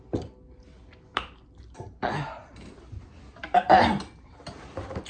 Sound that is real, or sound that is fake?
real